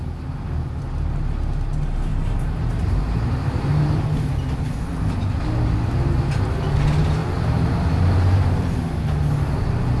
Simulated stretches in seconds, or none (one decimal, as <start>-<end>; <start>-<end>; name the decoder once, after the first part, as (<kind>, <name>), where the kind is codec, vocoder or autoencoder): 2.1-4.3 (vocoder, BigVGAN v2); 7.2-8.8